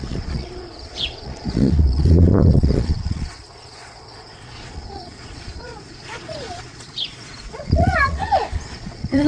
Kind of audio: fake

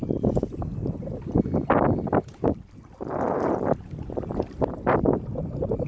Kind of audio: real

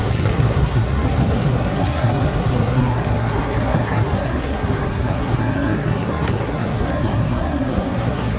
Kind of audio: fake